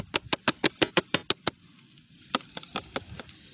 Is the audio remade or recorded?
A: recorded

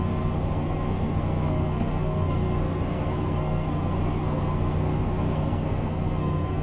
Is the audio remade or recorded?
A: remade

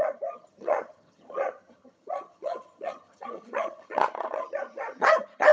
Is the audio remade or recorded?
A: remade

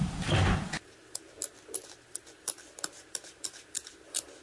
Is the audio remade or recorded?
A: recorded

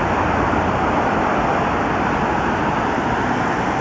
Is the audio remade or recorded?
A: recorded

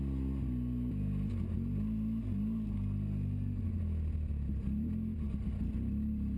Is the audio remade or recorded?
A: recorded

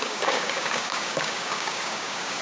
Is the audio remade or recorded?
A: remade